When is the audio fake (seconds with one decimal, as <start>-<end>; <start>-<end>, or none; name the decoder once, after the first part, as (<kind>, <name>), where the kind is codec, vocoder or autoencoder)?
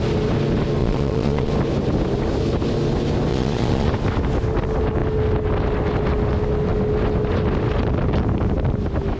0.8-1.5 (vocoder, Vocos); 3.3-3.9